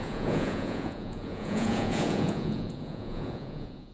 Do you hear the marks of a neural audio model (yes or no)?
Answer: yes